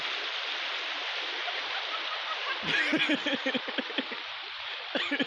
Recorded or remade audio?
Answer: remade